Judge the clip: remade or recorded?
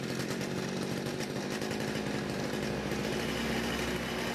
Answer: recorded